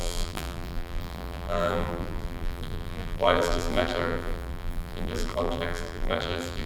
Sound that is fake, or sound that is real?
fake